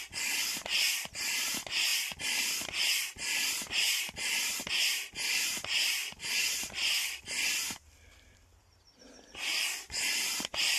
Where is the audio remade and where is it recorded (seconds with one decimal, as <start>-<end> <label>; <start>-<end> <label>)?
0.0-10.8 recorded